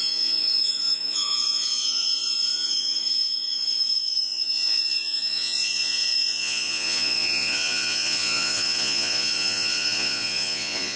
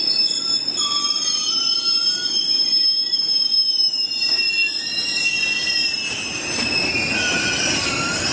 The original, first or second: second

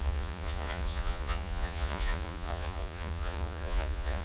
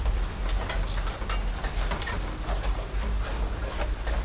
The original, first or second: second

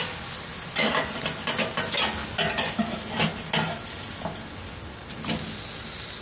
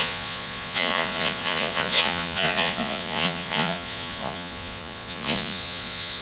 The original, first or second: first